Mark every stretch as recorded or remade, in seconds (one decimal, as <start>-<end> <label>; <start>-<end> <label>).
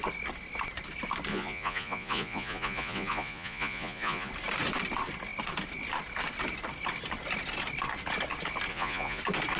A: 0.0-1.3 recorded; 1.3-4.3 remade; 4.3-8.7 recorded; 8.7-9.2 remade; 9.2-9.6 recorded